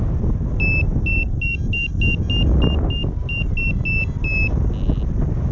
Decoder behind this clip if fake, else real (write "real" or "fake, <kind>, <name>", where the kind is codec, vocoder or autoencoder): real